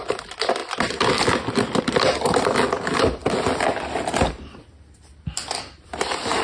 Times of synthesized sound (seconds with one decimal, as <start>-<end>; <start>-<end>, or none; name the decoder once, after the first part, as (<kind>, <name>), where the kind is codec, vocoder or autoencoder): none